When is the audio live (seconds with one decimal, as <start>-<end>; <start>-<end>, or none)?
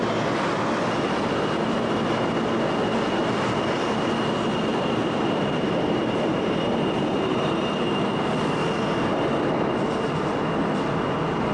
0.0-3.2; 4.0-4.7; 8.4-11.5